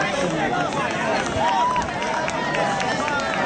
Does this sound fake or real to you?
real